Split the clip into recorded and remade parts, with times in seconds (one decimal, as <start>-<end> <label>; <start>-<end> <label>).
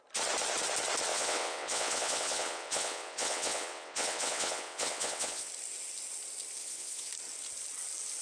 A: 0.0-1.1 recorded; 1.1-5.5 remade; 5.5-6.6 recorded; 6.6-7.1 remade; 7.1-8.2 recorded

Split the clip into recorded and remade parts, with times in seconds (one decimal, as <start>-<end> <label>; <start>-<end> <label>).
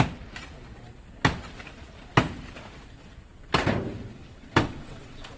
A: 0.0-4.1 recorded; 4.1-5.4 remade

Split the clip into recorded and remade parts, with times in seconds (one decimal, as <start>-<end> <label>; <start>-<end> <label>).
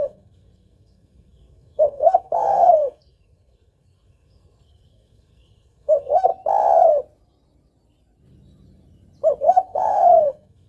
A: 0.0-6.3 remade; 6.3-9.4 recorded; 9.4-10.7 remade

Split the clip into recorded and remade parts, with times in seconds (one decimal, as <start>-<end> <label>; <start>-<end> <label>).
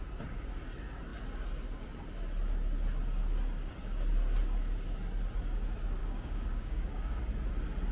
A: 0.0-6.0 recorded; 6.0-7.2 remade; 7.2-7.9 recorded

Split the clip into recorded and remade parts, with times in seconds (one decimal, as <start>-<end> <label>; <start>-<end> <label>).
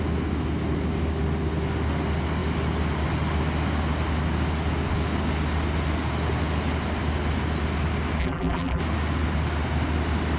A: 0.0-8.2 recorded; 8.2-8.8 remade; 8.8-10.4 recorded